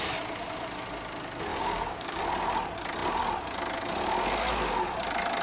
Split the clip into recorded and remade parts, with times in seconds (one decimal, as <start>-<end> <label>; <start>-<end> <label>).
0.0-1.5 recorded; 1.5-2.2 remade; 2.2-5.4 recorded